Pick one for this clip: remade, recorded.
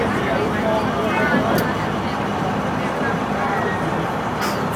recorded